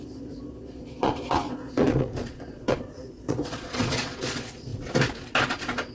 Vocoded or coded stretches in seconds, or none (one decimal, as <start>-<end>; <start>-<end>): 0.0-4.7; 5.5-5.9